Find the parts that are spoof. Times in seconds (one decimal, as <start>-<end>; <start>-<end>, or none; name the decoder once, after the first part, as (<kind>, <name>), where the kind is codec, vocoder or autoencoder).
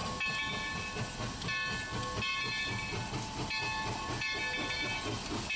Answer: none